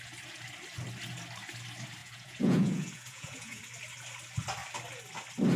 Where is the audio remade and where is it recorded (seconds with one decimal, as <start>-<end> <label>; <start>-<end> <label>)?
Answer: 0.0-2.0 recorded; 2.0-3.6 remade; 3.6-5.6 recorded